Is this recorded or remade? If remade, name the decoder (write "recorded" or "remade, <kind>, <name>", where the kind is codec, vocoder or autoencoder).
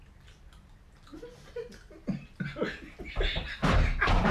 recorded